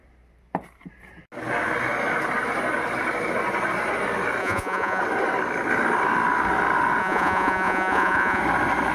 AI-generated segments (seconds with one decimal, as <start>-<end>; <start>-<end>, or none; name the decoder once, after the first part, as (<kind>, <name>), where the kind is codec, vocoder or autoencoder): 4.4-5.0 (vocoder, Vocos); 7.0-8.4